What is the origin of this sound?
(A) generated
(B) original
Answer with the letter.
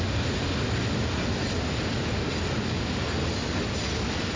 B